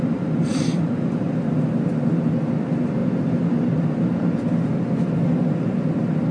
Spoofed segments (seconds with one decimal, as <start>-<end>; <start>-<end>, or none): 0.5-1.1